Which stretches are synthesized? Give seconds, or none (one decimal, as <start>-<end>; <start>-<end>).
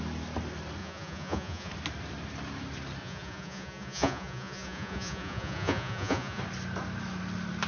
0.8-1.7; 3.0-6.4